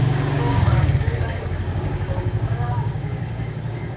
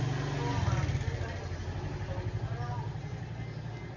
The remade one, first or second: first